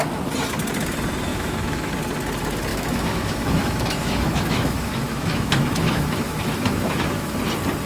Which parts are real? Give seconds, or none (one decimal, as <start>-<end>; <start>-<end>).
0.0-1.3; 1.9-2.7; 7.4-7.9